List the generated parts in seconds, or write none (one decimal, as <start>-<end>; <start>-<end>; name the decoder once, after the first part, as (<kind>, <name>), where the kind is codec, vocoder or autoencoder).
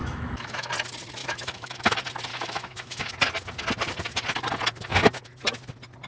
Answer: 0.0-0.7 (autoencoder, DAC-VAE); 1.2-1.9; 2.3-3.1